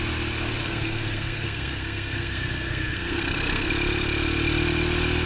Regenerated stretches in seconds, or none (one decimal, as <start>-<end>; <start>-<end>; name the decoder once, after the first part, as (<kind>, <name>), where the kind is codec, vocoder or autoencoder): 0.6-3.7 (codec, SNAC)